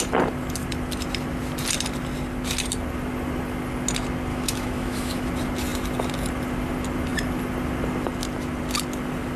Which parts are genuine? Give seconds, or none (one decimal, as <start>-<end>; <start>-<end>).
0.0-4.3; 5.3-9.4